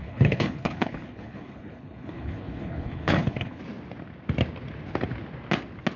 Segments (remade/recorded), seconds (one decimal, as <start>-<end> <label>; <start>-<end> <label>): 0.0-3.6 remade; 3.6-6.0 recorded